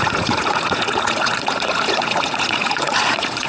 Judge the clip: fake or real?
fake